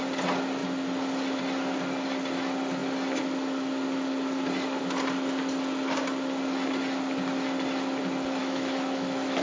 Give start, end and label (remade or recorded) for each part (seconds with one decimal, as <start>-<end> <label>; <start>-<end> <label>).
0.0-8.4 recorded; 8.4-9.4 remade